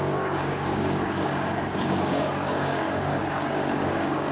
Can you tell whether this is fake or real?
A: fake